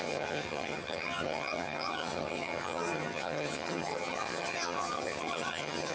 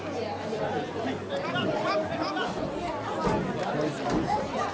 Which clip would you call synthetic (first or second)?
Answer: first